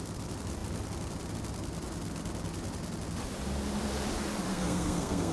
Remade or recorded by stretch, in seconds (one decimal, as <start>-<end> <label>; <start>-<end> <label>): 0.0-4.5 recorded; 4.5-5.3 remade